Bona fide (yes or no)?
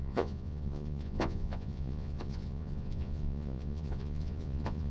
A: no